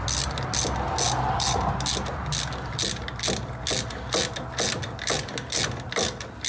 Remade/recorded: recorded